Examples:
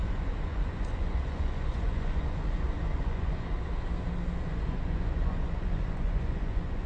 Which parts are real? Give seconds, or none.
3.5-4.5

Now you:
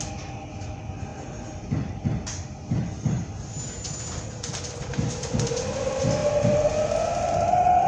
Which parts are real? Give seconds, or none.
0.0-7.9